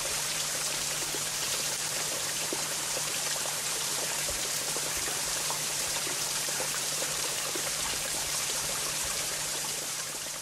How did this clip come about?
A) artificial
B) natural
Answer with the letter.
A